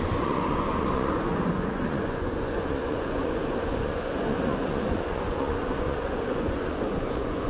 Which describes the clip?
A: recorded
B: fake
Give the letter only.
B